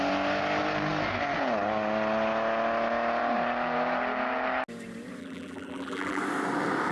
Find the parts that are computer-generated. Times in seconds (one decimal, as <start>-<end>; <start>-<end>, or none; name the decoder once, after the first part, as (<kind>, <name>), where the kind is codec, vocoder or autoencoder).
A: 5.2-6.2 (vocoder, BigVGAN v2)